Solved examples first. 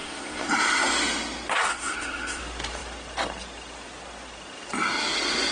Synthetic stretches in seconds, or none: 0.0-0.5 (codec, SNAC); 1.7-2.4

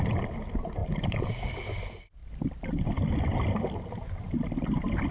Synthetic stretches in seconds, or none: none

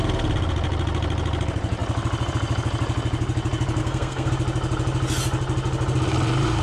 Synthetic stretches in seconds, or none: 3.8-4.3 (codec, SNAC)

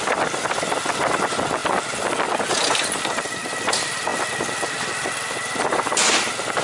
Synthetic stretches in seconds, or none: none

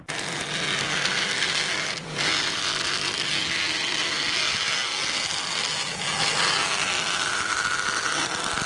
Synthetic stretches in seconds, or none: 0.8-1.7 (codec, SNAC)

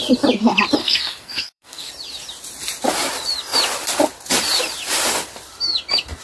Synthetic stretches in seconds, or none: 0.8-1.9 (codec, SNAC)

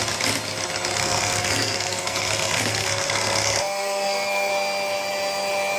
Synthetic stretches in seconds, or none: 1.0-4.5 (codec, SNAC)

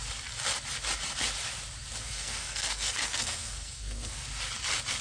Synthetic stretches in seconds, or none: 2.0-4.3 (codec, SNAC)